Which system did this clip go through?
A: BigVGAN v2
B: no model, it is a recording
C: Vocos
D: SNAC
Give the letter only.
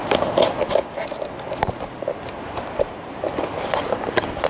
B